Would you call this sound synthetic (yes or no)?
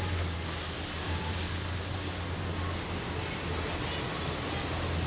no